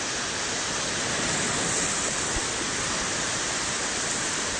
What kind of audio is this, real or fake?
fake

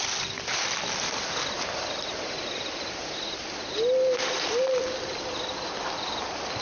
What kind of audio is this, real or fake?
real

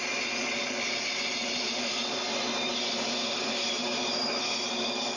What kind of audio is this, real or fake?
real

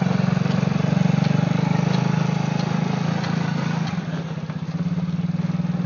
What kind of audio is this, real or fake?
real